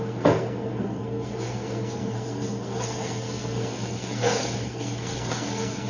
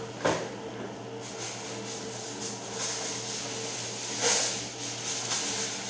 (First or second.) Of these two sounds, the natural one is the second